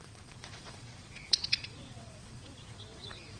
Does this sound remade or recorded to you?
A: remade